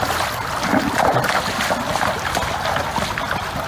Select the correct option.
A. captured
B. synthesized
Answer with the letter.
A